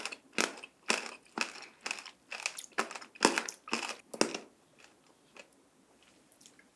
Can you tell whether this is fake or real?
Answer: real